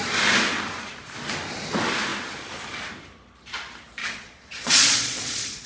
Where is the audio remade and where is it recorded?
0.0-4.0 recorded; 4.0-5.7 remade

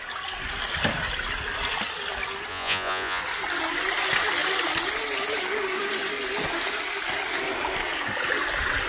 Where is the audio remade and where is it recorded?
0.0-2.5 recorded; 2.5-3.2 remade; 3.2-8.9 recorded